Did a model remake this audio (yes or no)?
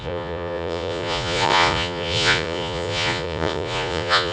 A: yes